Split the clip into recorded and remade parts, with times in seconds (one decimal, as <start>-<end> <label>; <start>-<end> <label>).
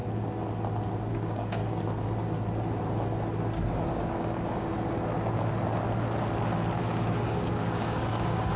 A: 0.0-1.1 recorded; 1.1-1.6 remade; 1.6-3.7 recorded; 3.7-4.7 remade; 4.7-6.8 recorded; 6.8-8.6 remade